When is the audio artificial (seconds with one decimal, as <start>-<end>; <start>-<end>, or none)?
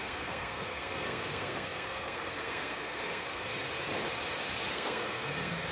0.0-3.5; 4.7-5.7